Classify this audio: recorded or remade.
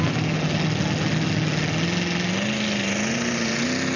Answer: recorded